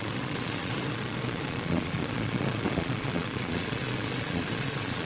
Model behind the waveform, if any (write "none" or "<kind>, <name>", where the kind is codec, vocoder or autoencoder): vocoder, Vocos